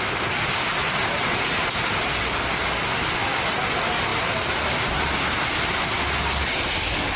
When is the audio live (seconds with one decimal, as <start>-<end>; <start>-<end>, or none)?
0.0-7.2